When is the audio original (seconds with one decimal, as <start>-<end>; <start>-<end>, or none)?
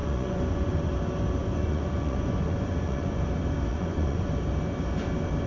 0.9-1.4; 3.2-3.7; 4.2-5.5